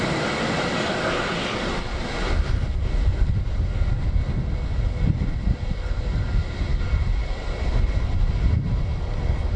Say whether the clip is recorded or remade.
recorded